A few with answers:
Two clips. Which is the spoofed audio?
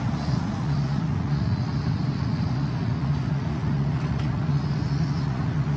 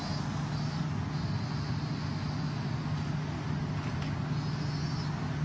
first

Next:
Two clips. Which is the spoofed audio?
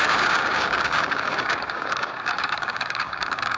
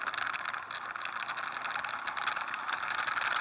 first